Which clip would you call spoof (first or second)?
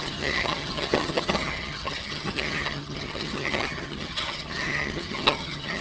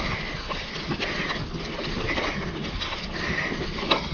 first